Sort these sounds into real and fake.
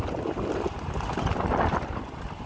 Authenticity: real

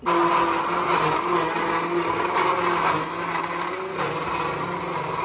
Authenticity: real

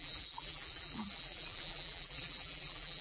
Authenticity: fake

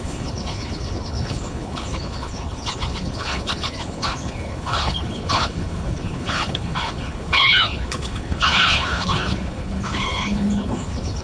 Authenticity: fake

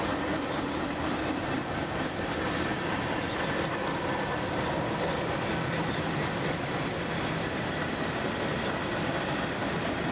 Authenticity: real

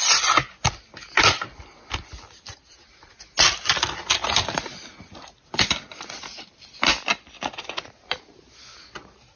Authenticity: real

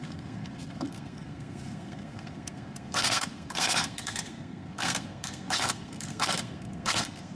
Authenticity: fake